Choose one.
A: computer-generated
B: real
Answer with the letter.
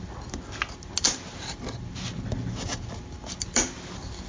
B